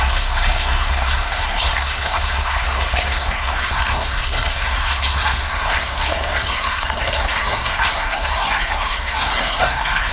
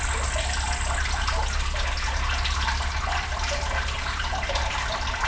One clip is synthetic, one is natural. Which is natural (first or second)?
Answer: second